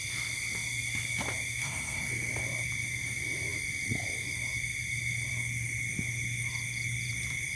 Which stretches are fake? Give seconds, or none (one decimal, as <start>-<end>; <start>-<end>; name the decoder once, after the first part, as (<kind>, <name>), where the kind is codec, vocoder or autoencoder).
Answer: 1.6-2.1 (codec, SNAC)